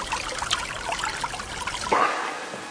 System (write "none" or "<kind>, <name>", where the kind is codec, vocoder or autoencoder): none